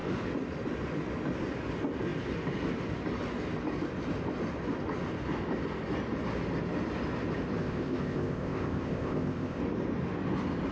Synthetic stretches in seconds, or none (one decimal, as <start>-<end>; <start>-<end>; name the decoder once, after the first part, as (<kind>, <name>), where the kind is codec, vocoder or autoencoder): 7.6-9.6 (codec, ZipCodec)